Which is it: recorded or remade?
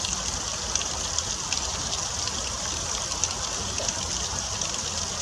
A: recorded